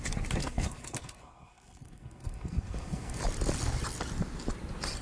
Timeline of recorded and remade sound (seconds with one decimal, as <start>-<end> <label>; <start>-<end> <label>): 0.0-0.4 recorded; 0.4-3.2 remade; 3.2-5.0 recorded